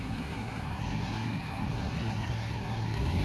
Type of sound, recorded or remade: remade